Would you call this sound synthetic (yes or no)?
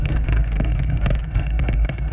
yes